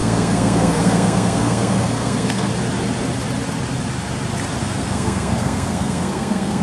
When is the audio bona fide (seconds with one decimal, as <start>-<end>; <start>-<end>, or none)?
2.5-4.6